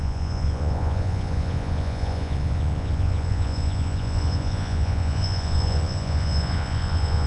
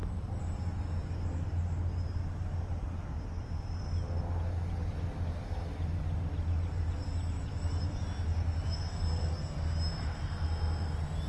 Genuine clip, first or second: second